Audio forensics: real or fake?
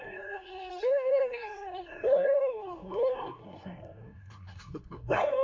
fake